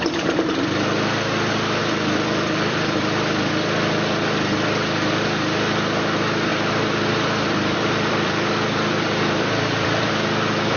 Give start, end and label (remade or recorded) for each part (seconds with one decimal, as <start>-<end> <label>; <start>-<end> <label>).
0.0-1.8 recorded; 1.8-3.5 remade; 3.5-6.5 recorded; 6.5-10.1 remade; 10.1-10.8 recorded